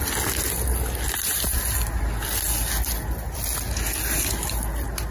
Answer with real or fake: real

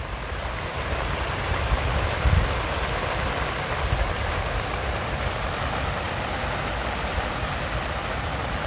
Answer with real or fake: real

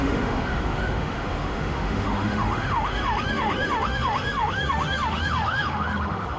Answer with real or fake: fake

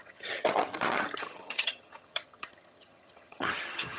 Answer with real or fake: fake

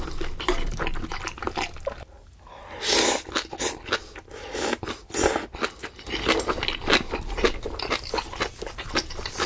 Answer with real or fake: real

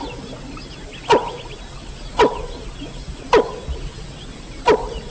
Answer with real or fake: real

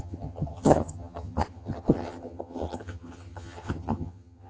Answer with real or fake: fake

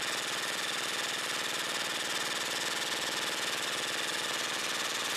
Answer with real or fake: real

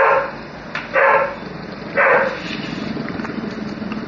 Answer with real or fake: real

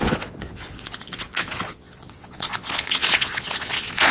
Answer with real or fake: fake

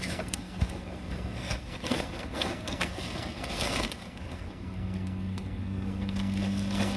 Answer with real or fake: fake